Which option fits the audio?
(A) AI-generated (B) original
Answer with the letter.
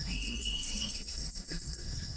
A